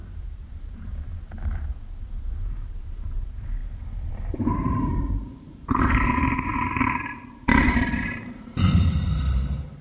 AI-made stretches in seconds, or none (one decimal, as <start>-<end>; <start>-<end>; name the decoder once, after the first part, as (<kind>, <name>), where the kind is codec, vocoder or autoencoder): 0.0-3.6 (vocoder, BigVGAN v2); 4.5-9.8